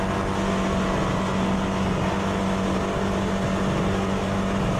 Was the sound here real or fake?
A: real